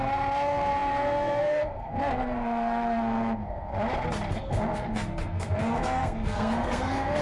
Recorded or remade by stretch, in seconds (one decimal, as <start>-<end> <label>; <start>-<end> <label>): 0.0-3.7 remade; 3.7-4.3 recorded; 4.3-7.2 remade